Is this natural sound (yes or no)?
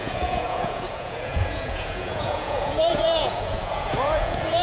no